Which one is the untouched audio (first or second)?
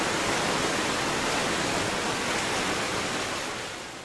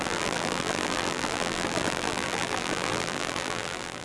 first